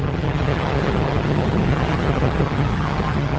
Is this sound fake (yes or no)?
yes